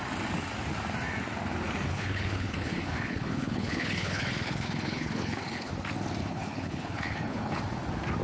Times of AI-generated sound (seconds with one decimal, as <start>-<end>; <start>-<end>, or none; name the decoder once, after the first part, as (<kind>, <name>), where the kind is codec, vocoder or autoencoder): 1.9-5.7 (codec, HILCodec); 6.2-7.6